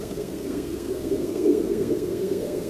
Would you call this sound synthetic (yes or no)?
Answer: yes